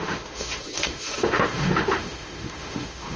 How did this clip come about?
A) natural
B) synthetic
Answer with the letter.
B